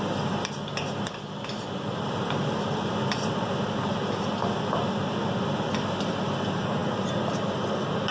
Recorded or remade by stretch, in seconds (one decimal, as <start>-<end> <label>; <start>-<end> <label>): 0.0-8.1 recorded